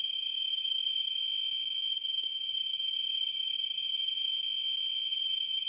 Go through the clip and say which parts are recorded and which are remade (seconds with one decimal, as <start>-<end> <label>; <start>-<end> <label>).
0.0-1.2 remade; 1.2-1.9 recorded; 1.9-4.3 remade; 4.3-5.1 recorded; 5.1-5.7 remade